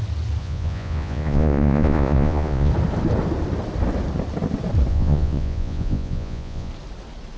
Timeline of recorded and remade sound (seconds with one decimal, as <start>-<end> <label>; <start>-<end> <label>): 0.0-0.4 recorded; 0.4-2.7 remade; 2.7-4.9 recorded; 4.9-6.7 remade; 6.7-7.4 recorded